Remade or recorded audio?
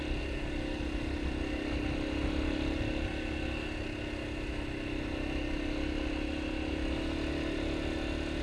recorded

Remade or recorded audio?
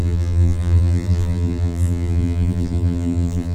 remade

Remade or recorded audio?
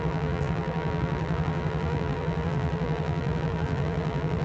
remade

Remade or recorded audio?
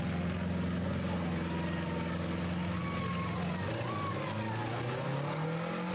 recorded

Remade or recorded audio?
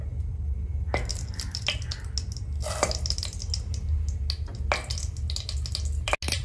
recorded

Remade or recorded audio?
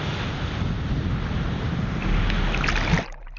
recorded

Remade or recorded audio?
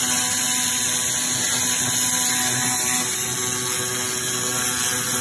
recorded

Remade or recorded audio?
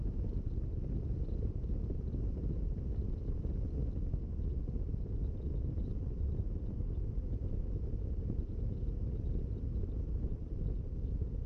recorded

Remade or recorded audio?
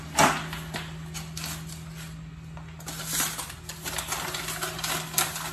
recorded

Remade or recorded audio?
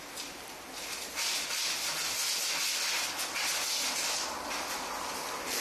recorded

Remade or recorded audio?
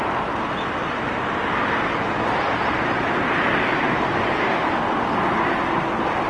recorded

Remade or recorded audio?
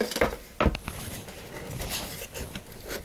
recorded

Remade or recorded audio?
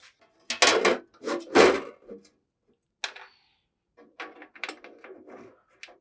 recorded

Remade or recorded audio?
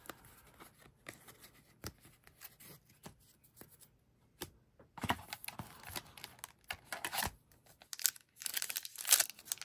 recorded